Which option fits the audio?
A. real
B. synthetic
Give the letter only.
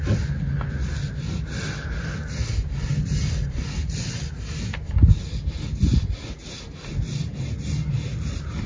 A